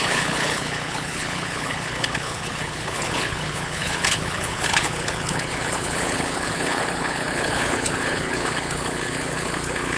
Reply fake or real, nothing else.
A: fake